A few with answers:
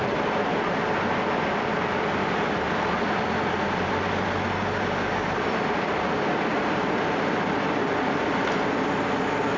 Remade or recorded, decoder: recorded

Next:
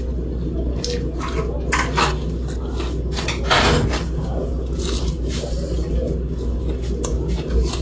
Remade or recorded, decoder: recorded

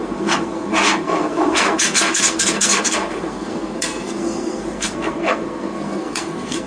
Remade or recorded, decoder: remade, codec, SNAC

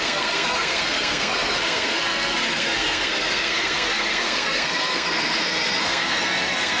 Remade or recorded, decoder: remade, codec, SNAC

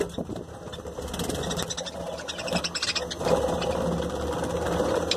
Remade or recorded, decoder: recorded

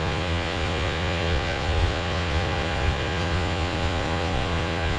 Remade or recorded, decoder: remade, vocoder, Vocos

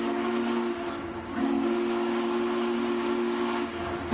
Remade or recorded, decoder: recorded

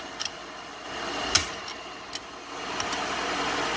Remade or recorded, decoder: recorded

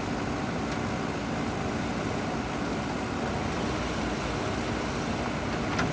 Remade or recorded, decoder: recorded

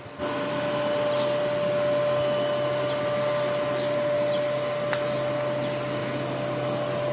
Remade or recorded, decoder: recorded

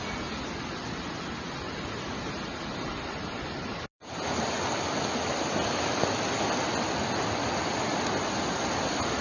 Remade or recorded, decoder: recorded